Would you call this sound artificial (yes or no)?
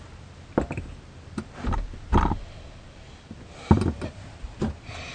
no